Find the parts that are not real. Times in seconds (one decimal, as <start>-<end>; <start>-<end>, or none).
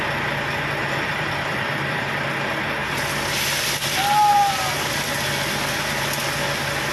0.8-2.1; 4.3-4.9